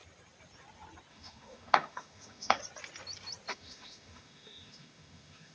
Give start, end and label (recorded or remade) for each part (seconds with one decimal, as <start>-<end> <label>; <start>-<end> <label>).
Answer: 0.0-1.1 recorded; 1.1-2.6 remade; 2.6-3.5 recorded; 3.5-5.5 remade